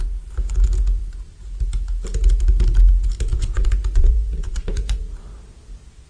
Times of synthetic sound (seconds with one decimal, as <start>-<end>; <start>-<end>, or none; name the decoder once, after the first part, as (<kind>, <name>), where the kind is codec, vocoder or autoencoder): 3.3-5.0 (vocoder, Vocos)